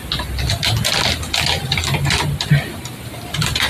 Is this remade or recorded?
recorded